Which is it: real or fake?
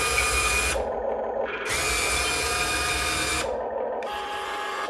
real